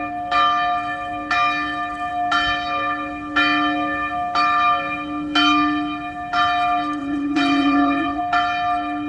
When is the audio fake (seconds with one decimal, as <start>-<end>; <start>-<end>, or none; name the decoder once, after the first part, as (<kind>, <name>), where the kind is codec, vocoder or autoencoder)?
7.0-8.2 (vocoder, Vocos)